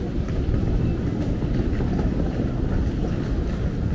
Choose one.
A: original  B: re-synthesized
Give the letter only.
A